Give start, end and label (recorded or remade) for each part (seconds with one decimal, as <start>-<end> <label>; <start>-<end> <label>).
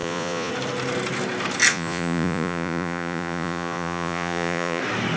0.0-0.5 remade; 0.5-1.7 recorded; 1.7-4.8 remade; 4.8-5.2 recorded